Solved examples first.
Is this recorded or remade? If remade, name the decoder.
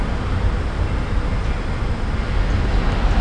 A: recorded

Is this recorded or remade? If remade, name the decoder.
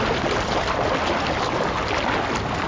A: recorded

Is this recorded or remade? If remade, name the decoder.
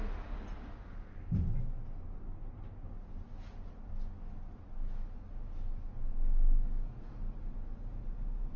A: recorded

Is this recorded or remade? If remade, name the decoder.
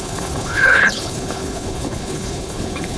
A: remade, codec, HILCodec